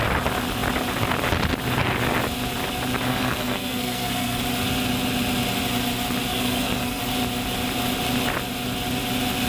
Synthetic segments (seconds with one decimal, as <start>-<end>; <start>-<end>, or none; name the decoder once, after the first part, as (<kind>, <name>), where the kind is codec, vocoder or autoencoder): 3.1-4.4 (codec, SNAC); 6.3-7.0